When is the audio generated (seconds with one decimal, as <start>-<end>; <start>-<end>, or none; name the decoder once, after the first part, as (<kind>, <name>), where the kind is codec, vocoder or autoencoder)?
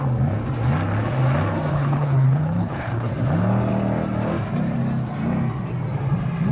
1.7-3.1 (codec, HILCodec)